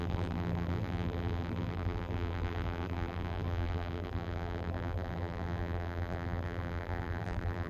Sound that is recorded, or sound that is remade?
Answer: remade